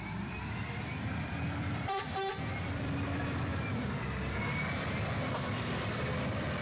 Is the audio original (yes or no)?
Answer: no